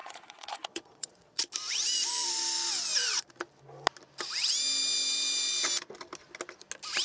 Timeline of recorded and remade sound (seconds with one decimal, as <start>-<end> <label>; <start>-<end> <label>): 0.0-1.4 remade; 1.4-7.0 recorded